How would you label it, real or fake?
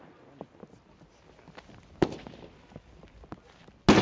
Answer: real